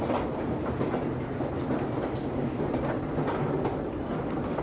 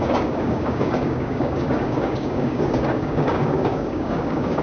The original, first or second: first